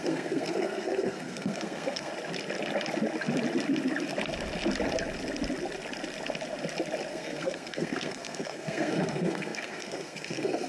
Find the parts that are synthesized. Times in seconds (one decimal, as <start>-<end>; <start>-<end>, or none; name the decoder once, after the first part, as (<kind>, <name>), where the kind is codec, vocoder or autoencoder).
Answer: 0.0-2.1 (codec, SNAC); 7.1-10.7